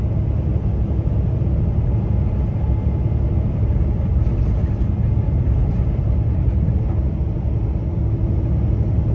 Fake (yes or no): no